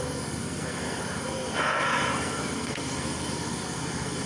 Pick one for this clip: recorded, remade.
remade